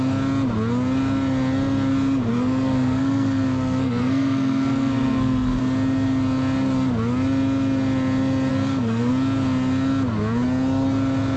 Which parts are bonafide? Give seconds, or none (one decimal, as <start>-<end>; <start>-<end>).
0.0-2.3; 5.6-8.5; 9.1-11.4